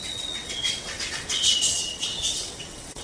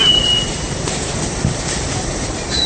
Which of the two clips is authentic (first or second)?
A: second